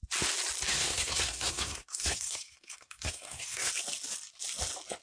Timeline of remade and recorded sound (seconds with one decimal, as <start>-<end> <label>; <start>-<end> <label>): 0.0-0.7 recorded; 0.7-3.7 remade; 3.7-5.0 recorded